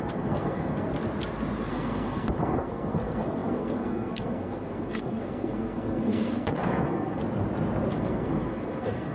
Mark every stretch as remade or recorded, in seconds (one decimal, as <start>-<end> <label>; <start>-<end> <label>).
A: 0.0-0.9 remade; 0.9-1.7 recorded; 1.7-7.2 remade; 7.2-7.9 recorded; 7.9-9.1 remade